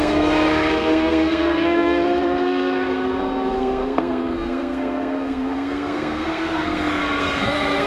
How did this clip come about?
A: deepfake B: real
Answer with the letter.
A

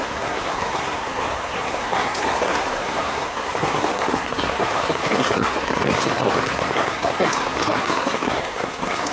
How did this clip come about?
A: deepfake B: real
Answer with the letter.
A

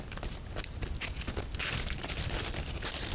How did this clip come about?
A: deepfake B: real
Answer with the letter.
B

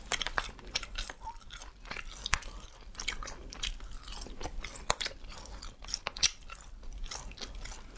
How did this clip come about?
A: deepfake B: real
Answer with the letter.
B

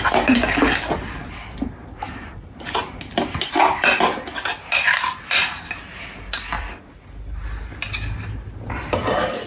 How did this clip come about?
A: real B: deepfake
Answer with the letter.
A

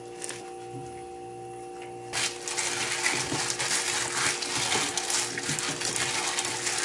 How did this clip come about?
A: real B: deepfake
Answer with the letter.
A